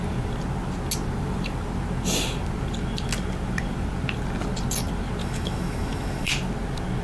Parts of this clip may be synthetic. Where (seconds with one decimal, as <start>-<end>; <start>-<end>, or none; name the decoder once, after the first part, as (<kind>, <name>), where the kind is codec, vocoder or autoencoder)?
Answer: 5.2-6.3 (autoencoder, DAC-VAE)